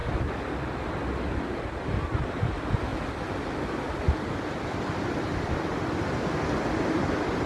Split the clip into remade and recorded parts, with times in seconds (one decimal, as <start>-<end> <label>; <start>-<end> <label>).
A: 0.0-7.5 recorded